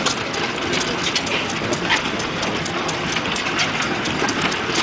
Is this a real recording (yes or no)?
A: yes